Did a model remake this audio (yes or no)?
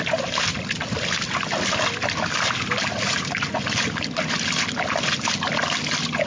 no